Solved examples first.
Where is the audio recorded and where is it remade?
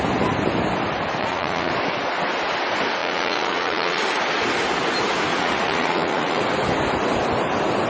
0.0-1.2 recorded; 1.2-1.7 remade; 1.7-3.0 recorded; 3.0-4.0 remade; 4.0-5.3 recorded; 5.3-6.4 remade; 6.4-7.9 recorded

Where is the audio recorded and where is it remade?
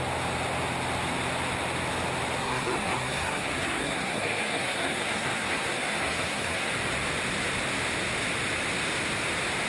0.0-2.4 recorded; 2.4-6.7 remade; 6.7-9.7 recorded